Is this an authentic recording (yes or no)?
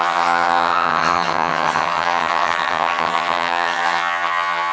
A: no